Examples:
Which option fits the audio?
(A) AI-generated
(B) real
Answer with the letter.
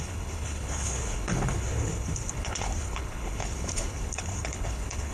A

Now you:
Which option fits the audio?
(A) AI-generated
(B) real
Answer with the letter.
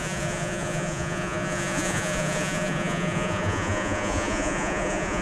A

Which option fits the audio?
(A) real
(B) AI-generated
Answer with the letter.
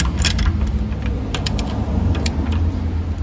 A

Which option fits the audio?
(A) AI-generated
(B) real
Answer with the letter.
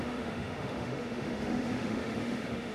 A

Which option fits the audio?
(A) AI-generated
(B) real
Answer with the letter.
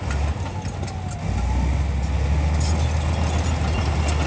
B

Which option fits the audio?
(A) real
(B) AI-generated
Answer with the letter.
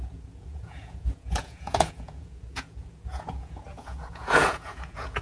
B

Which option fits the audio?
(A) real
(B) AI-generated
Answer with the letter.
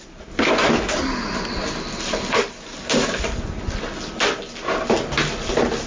A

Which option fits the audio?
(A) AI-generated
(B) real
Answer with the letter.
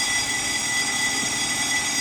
B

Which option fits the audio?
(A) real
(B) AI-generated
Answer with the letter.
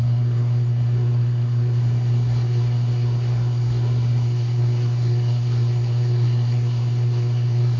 B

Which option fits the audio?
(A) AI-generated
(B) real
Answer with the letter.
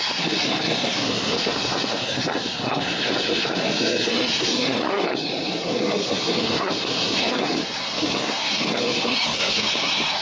A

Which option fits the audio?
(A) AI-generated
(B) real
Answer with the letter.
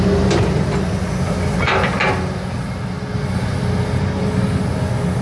B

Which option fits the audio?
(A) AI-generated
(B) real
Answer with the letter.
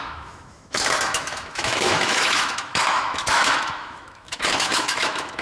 A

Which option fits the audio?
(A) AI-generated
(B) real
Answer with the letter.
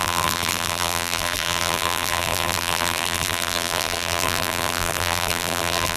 A